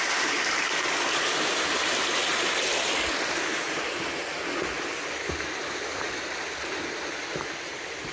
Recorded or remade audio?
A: recorded